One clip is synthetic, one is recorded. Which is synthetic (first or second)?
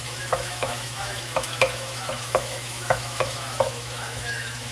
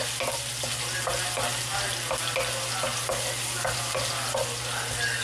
first